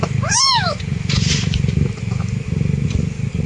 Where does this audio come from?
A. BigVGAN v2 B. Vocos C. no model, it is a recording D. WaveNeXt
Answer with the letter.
C